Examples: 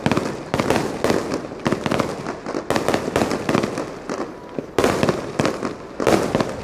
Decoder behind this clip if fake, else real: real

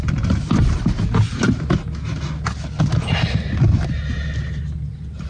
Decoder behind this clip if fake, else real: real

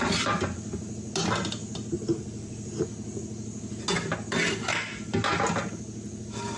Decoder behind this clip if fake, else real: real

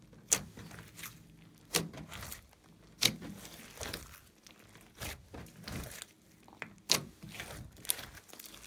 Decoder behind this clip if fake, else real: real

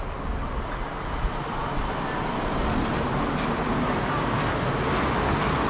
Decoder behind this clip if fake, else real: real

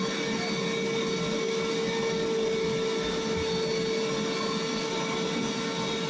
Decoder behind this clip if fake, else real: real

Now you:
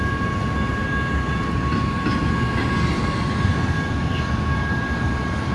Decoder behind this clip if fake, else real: real